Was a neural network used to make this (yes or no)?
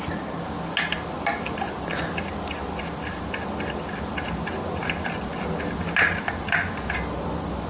no